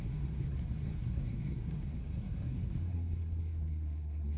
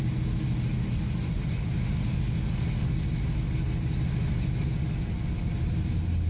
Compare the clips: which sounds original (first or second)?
second